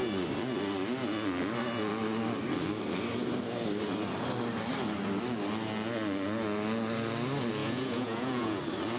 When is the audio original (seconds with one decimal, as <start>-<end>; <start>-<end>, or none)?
0.0-7.6; 8.6-9.0